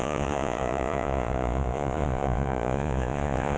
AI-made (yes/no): yes